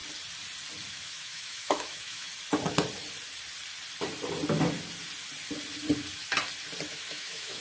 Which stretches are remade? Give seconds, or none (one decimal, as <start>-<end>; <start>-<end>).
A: 0.9-2.3; 6.9-7.6